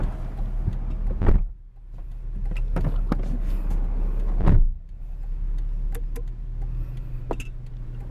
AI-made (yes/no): no